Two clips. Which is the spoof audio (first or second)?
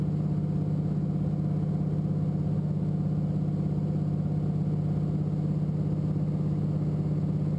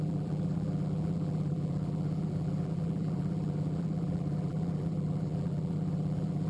second